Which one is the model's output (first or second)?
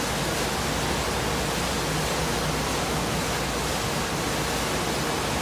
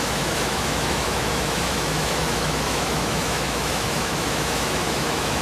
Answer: second